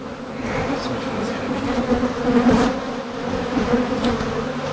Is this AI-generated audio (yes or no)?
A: no